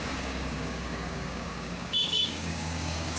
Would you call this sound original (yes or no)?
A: no